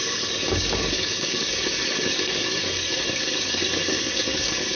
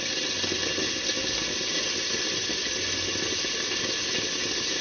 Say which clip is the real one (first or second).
second